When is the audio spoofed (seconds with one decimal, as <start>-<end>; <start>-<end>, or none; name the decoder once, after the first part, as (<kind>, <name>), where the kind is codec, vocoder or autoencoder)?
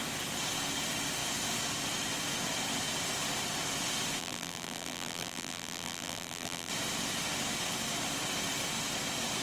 4.2-6.7 (vocoder, BigVGAN v2)